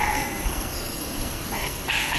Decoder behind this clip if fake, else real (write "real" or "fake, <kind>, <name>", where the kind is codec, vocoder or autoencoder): fake, codec, SNAC